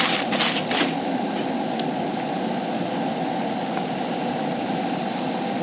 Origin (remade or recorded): recorded